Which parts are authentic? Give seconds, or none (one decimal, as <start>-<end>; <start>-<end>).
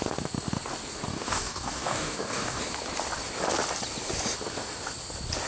0.0-1.1; 2.6-5.5